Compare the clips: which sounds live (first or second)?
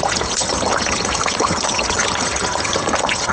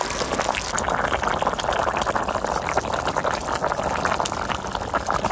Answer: second